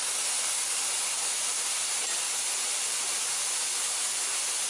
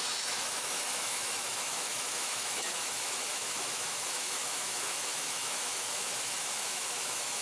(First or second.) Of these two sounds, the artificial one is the second